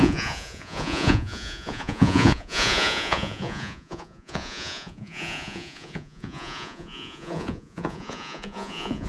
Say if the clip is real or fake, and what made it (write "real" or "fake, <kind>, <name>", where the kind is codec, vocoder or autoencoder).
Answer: fake, vocoder, Vocos